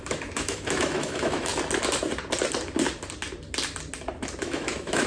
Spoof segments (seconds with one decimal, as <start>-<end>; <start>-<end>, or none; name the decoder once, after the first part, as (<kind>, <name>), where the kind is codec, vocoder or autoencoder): 0.0-1.5 (autoencoder, DAC-VAE); 4.4-5.1